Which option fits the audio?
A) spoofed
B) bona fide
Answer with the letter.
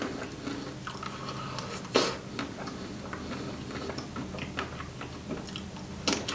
B